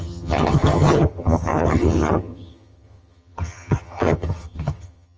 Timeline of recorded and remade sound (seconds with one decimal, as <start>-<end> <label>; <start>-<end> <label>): 0.0-5.2 remade